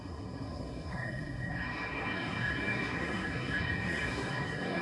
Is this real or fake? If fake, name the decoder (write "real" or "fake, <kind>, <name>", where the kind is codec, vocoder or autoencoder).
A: fake, codec, SNAC